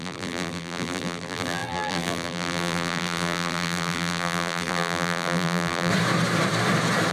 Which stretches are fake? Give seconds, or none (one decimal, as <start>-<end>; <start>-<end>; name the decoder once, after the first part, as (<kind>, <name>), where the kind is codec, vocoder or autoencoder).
0.0-5.9 (vocoder, BigVGAN v2)